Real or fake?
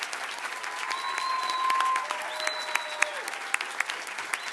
real